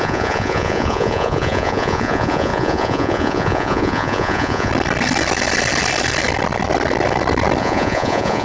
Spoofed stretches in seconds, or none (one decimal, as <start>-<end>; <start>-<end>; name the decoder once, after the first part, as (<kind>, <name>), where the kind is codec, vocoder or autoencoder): 0.0-4.7 (vocoder, Vocos); 7.6-8.4